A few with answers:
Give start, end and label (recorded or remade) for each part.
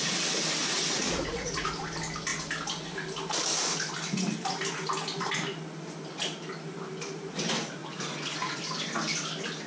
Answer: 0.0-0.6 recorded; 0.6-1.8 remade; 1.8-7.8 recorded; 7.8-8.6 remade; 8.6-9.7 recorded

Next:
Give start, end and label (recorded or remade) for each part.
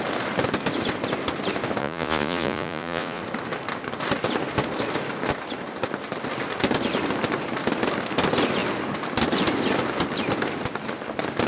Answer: 0.0-1.8 recorded; 1.8-3.2 remade; 3.2-11.5 recorded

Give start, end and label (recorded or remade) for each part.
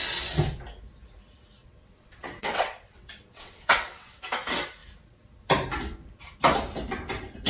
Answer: 0.0-1.6 recorded; 1.6-4.2 remade; 4.2-7.5 recorded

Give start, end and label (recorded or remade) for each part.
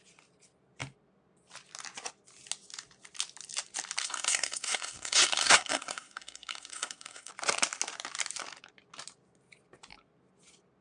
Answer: 0.0-4.0 recorded; 4.0-7.3 remade; 7.3-10.8 recorded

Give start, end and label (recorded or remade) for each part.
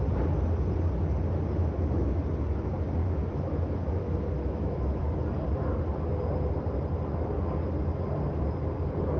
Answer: 0.0-1.6 recorded; 1.6-2.2 remade; 2.2-3.0 recorded; 3.0-5.2 remade; 5.2-9.2 recorded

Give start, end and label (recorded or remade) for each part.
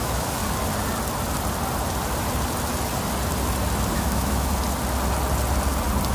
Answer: 0.0-0.4 remade; 0.4-3.9 recorded; 3.9-4.5 remade; 4.5-6.1 recorded